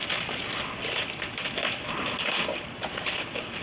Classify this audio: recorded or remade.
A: recorded